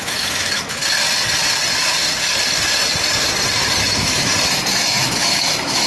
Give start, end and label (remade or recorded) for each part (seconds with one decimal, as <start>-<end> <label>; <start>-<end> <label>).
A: 0.0-0.8 remade; 0.8-3.8 recorded; 3.8-4.3 remade; 4.3-4.8 recorded; 4.8-5.9 remade